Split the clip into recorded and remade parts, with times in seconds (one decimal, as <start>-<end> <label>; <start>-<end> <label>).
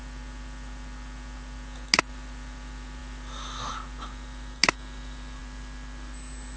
0.0-6.6 recorded